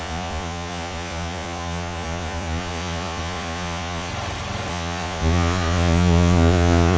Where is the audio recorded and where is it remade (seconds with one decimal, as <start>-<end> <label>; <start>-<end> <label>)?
0.0-4.1 remade; 4.1-4.7 recorded; 4.7-7.0 remade